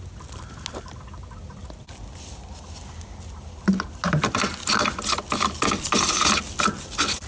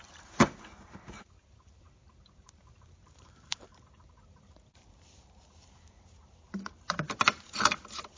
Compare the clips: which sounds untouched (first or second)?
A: first